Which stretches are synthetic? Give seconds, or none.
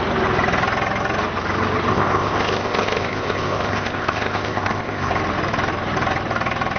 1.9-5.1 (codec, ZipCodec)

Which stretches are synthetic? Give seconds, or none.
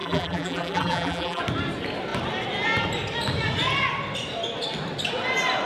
0.0-1.4 (vocoder, BigVGAN v2)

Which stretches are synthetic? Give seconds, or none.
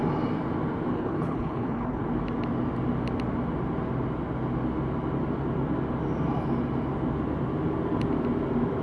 0.9-2.0 (codec, HILCodec)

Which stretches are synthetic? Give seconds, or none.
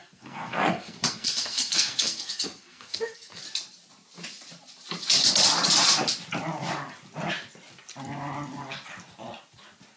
0.0-3.4 (codec, SNAC)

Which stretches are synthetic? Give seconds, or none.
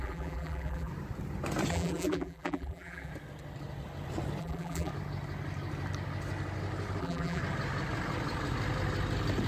0.0-0.9 (vocoder, BigVGAN v2); 1.7-3.1; 4.4-4.9; 7.0-7.4